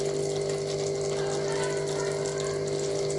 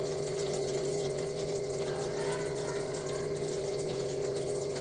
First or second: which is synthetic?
second